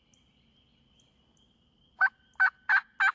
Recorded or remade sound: recorded